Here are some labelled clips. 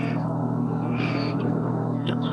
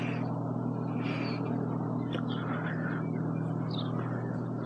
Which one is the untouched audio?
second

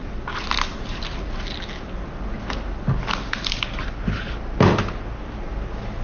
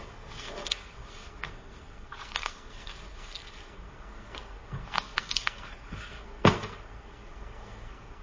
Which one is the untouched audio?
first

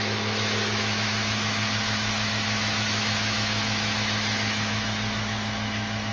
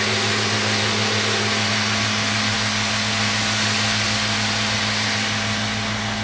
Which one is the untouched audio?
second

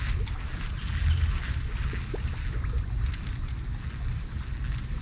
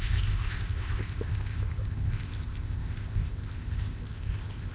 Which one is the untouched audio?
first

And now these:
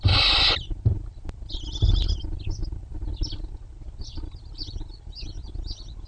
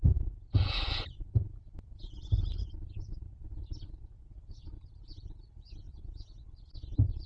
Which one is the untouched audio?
first